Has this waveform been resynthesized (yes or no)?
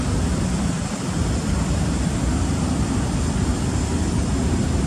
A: no